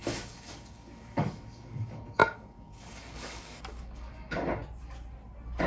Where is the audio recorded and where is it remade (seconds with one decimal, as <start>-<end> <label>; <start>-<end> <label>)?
0.0-4.6 remade; 4.6-5.7 recorded